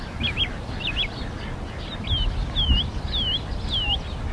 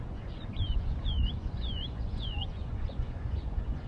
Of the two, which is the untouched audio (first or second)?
first